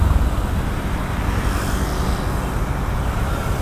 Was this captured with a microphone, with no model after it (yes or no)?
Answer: yes